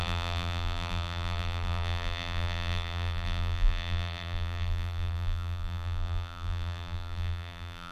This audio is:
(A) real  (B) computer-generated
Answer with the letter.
B